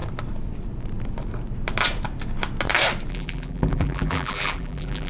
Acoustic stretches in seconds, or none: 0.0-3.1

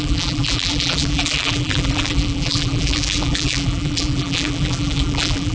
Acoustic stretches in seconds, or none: none

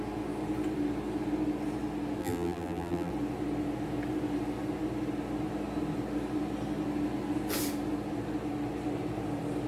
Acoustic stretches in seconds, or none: 0.0-2.2; 3.1-9.7

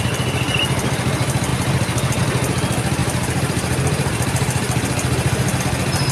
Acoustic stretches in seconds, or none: 0.0-3.0; 5.6-6.1

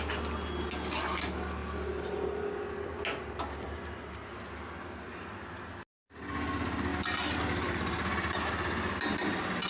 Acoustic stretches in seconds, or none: 0.0-6.9; 8.5-9.7

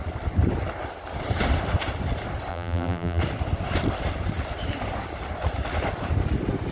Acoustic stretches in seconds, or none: 0.0-2.5; 3.2-6.7

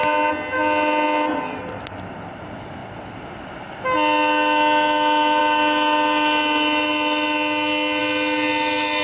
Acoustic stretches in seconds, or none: 0.0-9.0

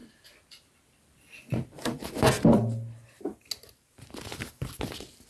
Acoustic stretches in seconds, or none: 3.2-5.3